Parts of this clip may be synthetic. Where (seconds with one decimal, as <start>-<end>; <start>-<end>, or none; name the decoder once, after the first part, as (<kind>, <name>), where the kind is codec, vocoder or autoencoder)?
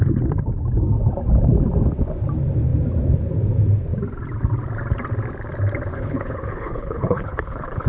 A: 5.9-7.9 (codec, HILCodec)